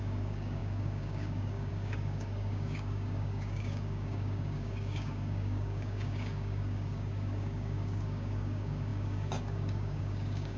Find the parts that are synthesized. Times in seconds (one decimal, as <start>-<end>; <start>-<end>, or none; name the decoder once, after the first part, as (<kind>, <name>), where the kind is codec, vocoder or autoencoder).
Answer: 0.0-10.6 (codec, DAC)